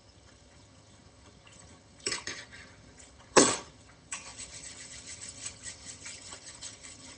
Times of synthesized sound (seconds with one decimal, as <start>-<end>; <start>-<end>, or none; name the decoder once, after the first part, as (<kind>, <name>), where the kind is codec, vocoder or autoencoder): 0.0-7.2 (vocoder, HiFi-GAN)